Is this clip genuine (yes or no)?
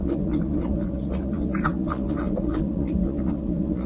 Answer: no